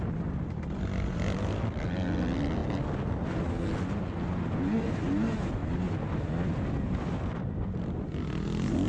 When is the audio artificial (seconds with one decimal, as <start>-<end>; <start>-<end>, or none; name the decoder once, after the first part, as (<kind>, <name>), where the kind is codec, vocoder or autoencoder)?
5.6-7.8 (vocoder, BigVGAN v2)